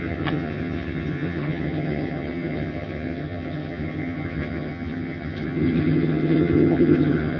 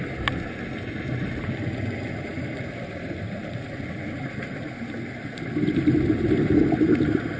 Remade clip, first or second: first